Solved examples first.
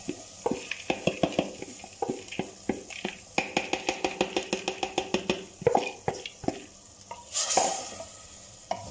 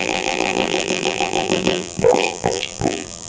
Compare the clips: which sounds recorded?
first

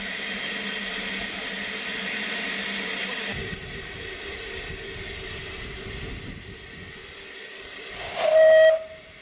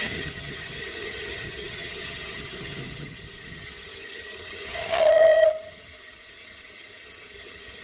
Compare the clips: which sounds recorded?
first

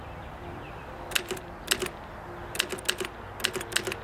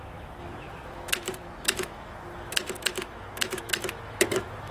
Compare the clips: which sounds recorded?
first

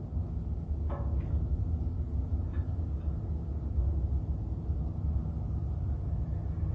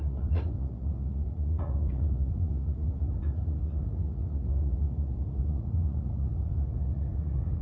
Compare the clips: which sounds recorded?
first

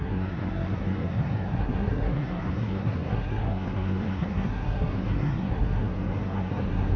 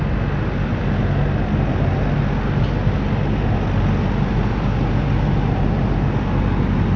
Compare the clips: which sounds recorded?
second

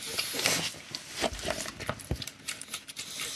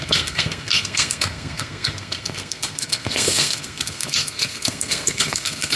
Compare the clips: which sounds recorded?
first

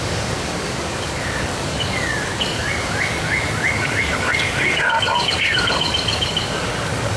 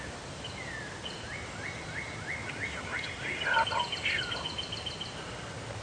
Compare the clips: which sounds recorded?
second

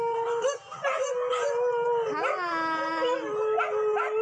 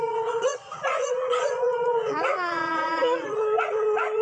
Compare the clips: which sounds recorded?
first